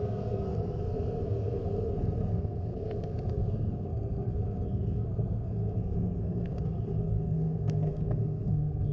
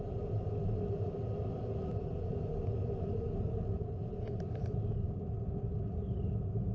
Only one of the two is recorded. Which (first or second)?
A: second